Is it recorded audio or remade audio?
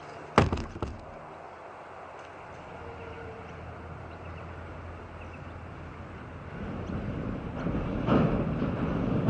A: recorded